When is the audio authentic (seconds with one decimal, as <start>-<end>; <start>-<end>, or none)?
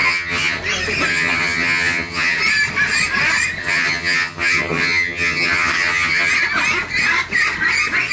0.6-1.1; 2.4-3.6; 6.3-8.1